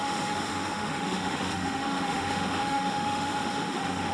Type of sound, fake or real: fake